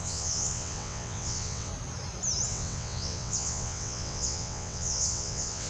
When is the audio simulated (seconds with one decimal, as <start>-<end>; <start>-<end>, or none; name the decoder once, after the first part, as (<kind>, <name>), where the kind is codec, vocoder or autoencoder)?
0.0-1.7 (vocoder, WaveNeXt); 2.5-5.7